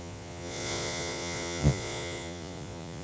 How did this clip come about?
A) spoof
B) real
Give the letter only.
A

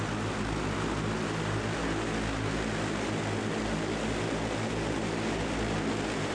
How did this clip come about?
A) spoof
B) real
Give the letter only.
B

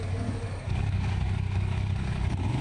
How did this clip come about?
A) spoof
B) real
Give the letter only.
A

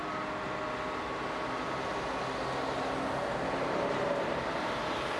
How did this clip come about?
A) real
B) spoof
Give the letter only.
A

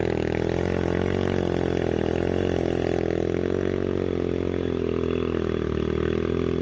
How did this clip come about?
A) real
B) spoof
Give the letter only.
A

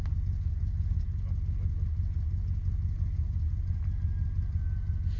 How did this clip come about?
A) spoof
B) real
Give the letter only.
B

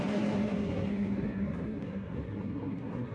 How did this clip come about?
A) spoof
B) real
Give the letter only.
A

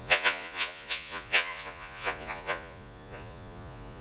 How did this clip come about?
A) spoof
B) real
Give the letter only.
A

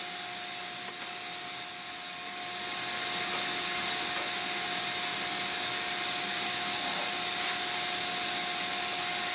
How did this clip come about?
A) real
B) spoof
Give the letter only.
A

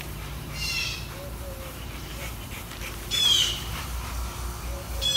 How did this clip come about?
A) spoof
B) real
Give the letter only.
A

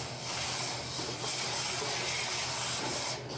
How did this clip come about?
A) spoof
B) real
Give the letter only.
B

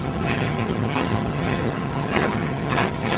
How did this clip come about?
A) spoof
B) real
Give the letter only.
A